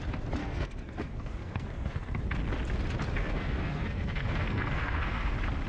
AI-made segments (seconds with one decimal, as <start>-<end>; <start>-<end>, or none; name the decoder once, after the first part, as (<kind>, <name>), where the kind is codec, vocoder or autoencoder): 0.4-2.2 (codec, SNAC); 3.2-5.3